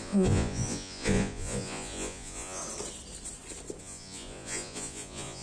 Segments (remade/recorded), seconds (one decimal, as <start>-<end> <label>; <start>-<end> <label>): 0.0-2.6 remade; 2.6-3.8 recorded; 3.8-5.4 remade